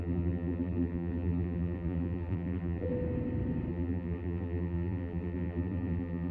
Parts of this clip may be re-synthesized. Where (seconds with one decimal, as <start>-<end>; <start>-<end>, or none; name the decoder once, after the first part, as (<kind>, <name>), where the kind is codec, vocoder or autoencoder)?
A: 0.0-2.9 (vocoder, BigVGAN v2); 3.7-6.3